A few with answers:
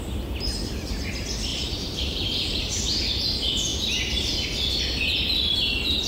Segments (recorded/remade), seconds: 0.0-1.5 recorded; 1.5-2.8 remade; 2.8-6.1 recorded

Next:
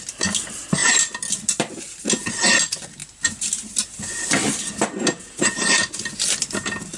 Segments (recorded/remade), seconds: 0.0-7.0 recorded

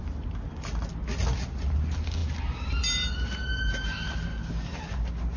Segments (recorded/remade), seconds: 0.0-5.4 recorded

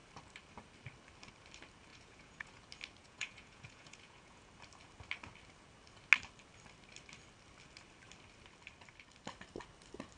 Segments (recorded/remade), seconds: 0.0-1.9 recorded; 1.9-2.6 remade; 2.6-3.0 recorded; 3.0-4.5 remade; 4.5-10.2 recorded